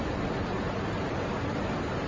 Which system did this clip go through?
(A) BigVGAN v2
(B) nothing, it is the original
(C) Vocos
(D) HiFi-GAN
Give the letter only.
B